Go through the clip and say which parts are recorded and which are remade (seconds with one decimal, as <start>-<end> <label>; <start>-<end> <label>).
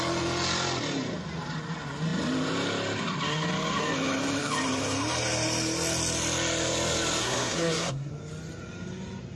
0.0-7.2 recorded; 7.2-8.1 remade; 8.1-9.4 recorded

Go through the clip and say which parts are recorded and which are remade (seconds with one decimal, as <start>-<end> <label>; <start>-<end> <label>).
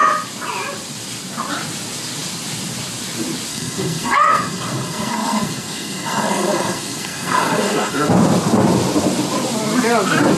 0.0-3.5 recorded; 3.5-8.1 remade; 8.1-10.4 recorded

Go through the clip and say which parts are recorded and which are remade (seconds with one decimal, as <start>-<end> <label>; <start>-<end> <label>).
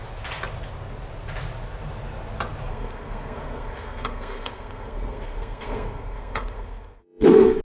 0.0-2.7 recorded; 2.7-7.6 remade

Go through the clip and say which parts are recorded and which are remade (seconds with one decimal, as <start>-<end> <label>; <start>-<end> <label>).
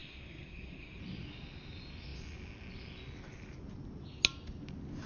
0.0-1.0 remade; 1.0-5.1 recorded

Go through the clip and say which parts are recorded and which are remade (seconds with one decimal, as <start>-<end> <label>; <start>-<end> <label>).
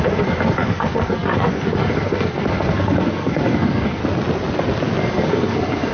0.0-4.0 remade; 4.0-5.0 recorded; 5.0-5.9 remade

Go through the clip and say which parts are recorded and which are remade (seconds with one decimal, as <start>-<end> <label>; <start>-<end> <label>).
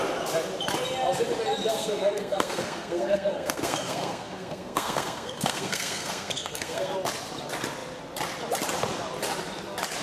0.0-1.7 recorded; 1.7-6.9 remade; 6.9-10.0 recorded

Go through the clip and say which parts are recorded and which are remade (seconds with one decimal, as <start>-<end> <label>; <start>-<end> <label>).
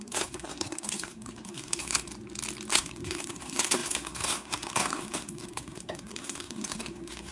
0.0-2.1 remade; 2.1-2.7 recorded; 2.7-7.3 remade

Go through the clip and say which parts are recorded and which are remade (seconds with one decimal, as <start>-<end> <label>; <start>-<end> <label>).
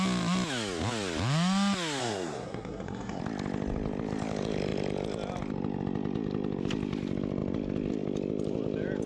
0.0-2.0 recorded; 2.0-3.2 remade; 3.2-9.1 recorded